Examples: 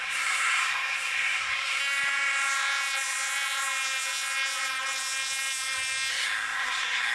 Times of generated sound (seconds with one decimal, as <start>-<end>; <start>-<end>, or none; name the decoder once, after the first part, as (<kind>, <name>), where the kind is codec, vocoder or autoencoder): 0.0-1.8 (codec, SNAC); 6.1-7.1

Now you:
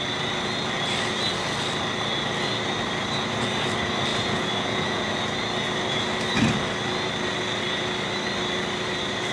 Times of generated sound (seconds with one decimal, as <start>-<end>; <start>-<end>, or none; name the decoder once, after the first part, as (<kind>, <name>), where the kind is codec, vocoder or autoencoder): 4.1-5.1 (vocoder, Vocos)

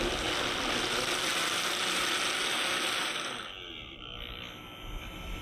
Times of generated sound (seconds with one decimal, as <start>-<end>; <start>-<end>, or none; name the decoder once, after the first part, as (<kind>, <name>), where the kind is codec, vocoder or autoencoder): none

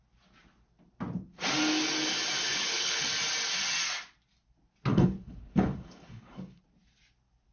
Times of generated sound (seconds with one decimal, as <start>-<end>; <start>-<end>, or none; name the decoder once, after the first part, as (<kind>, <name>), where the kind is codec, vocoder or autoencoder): 2.5-3.1 (codec, HILCodec); 4.9-6.6

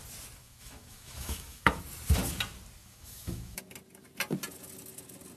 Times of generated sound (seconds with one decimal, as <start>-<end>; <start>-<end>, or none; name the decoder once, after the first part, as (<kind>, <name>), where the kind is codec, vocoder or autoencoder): 0.4-1.8 (autoencoder, DAC-VAE); 2.8-3.6

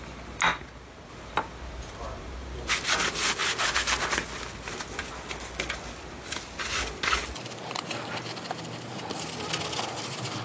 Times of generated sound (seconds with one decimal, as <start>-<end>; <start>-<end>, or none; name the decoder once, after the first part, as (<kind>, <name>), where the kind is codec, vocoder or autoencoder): none

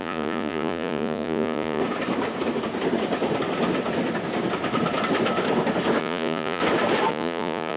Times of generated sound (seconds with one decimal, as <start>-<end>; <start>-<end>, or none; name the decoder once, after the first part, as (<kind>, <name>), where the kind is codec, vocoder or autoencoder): 0.0-1.8 (vocoder, Vocos); 6.0-6.6; 7.1-7.8